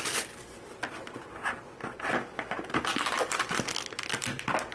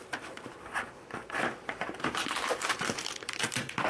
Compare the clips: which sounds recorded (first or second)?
first